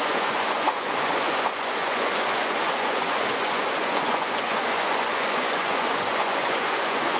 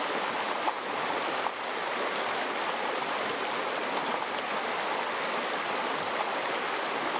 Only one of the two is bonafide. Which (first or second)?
second